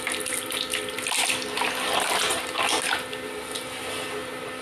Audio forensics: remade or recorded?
recorded